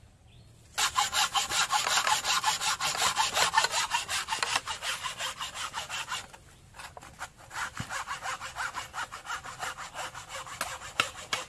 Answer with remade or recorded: recorded